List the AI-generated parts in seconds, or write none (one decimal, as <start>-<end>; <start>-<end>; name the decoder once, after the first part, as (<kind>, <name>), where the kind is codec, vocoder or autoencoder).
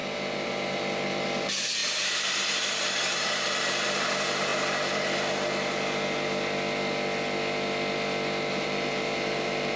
0.0-4.5 (vocoder, BigVGAN v2); 8.5-9.8